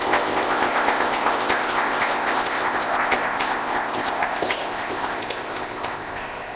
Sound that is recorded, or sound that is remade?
remade